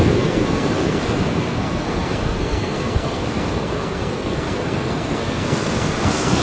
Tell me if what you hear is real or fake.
fake